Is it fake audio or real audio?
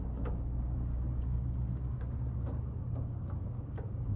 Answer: fake